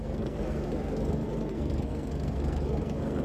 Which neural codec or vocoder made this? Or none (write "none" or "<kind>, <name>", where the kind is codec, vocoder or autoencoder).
codec, SNAC